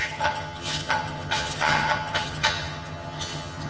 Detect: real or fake fake